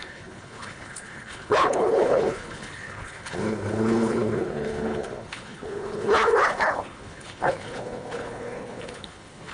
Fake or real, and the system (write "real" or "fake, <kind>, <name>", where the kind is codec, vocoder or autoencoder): fake, codec, HILCodec